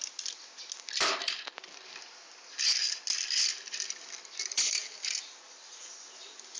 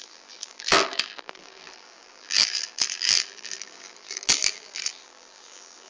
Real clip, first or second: first